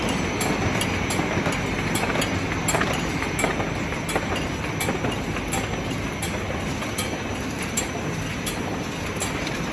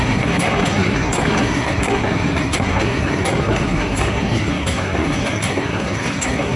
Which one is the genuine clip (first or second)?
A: first